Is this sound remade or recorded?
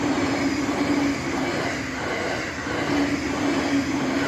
recorded